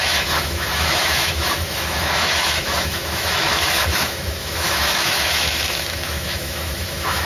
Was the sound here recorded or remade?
remade